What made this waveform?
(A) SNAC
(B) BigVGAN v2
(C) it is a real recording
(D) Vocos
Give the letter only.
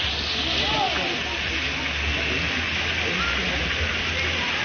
C